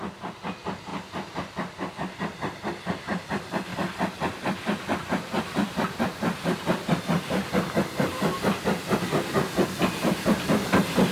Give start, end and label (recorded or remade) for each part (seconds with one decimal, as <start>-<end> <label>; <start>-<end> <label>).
0.0-0.9 remade; 0.9-1.9 recorded; 1.9-11.1 remade